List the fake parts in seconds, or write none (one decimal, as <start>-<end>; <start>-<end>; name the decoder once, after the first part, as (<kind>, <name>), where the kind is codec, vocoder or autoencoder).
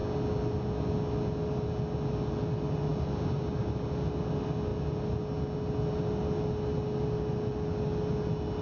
none